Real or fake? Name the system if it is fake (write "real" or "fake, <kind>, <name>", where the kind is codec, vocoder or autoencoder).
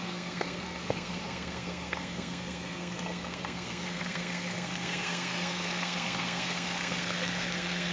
fake, codec, SNAC